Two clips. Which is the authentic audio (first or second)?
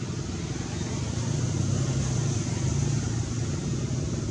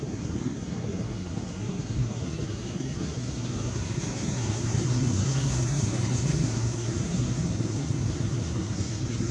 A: first